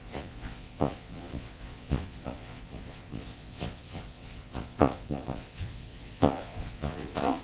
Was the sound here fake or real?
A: fake